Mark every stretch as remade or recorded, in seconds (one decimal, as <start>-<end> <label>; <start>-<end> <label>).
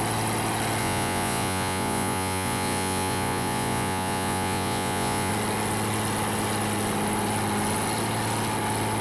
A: 0.0-0.8 recorded; 0.8-5.3 remade; 5.3-9.0 recorded